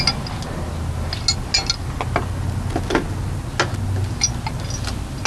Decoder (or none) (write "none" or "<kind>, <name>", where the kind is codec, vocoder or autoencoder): none